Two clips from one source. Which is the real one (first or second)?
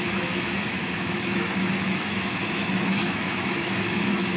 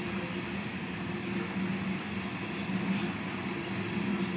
second